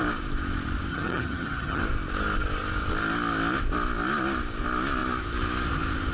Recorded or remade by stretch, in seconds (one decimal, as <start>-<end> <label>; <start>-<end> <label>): 0.0-0.9 recorded; 0.9-1.8 remade; 1.8-6.1 recorded